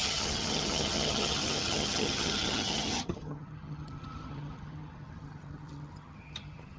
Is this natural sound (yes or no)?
no